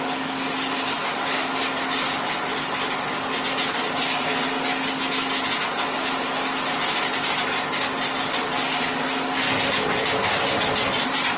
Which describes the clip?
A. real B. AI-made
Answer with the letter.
A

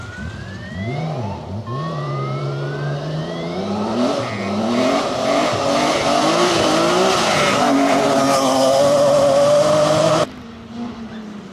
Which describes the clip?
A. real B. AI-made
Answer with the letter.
A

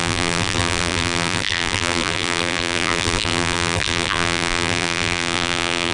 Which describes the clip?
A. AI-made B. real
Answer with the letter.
A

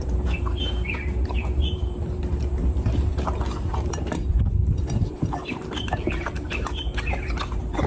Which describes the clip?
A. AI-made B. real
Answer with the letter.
A